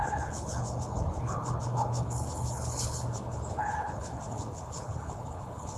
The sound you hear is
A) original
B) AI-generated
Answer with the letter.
B